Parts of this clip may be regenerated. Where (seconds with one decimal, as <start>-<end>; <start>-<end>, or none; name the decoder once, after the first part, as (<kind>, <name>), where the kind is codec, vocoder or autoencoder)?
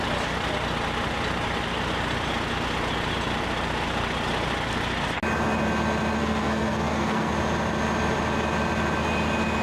6.2-7.3 (codec, SNAC)